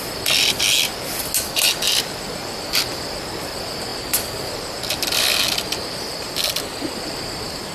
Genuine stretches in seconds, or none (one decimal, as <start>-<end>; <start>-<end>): 0.0-7.7